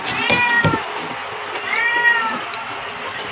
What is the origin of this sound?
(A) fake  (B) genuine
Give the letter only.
B